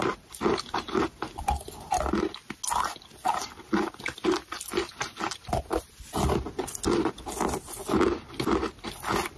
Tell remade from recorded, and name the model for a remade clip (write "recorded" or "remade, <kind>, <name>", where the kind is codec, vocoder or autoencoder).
recorded